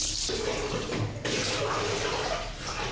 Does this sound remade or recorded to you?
recorded